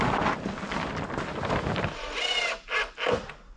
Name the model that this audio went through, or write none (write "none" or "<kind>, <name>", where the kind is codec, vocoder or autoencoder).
none